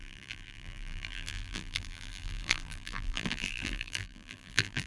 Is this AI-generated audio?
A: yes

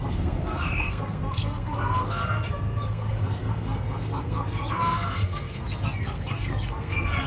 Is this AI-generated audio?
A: yes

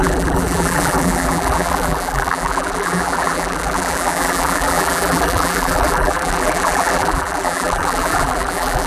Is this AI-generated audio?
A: yes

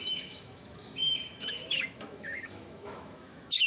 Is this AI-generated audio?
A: yes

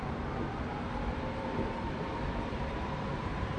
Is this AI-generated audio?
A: yes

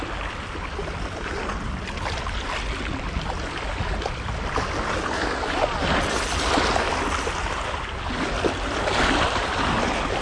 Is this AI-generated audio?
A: no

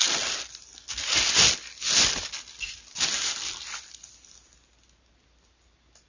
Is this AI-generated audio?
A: no